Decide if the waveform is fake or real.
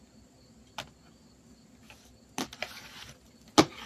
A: real